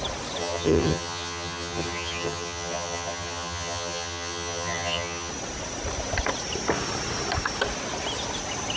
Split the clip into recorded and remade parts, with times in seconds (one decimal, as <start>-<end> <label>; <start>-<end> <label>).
0.0-0.4 recorded; 0.4-5.3 remade; 5.3-8.8 recorded